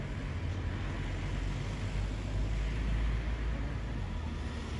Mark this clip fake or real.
real